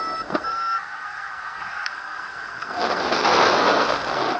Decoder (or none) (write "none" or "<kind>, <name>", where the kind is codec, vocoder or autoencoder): codec, SNAC